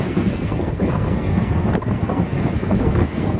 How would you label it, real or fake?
fake